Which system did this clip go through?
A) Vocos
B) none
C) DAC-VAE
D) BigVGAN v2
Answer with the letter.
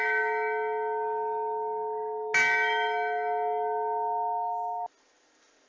B